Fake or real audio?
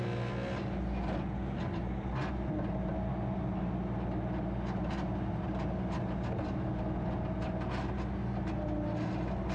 real